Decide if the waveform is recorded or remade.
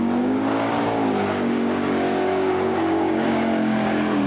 remade